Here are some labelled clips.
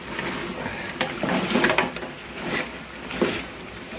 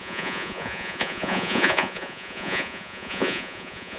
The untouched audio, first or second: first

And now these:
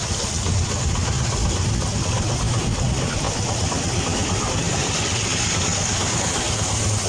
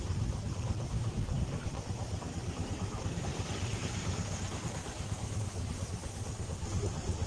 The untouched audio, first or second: first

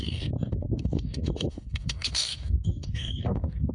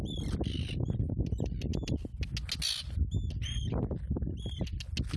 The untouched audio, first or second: second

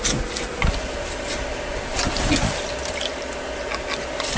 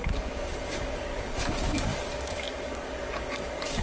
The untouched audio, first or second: first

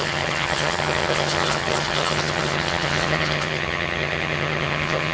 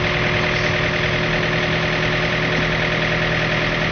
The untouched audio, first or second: second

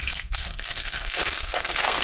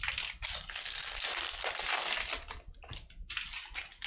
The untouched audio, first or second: second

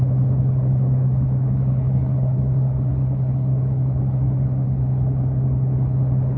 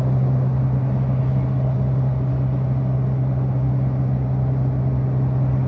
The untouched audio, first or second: second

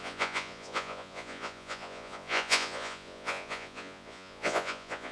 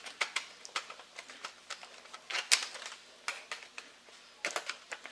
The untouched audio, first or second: second